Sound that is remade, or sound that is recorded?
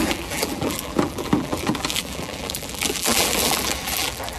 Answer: remade